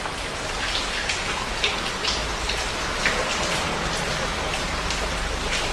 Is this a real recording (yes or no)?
yes